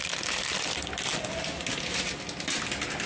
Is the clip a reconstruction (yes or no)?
no